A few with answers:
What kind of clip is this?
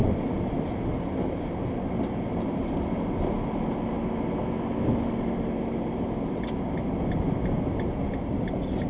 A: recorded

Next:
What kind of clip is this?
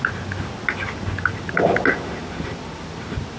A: recorded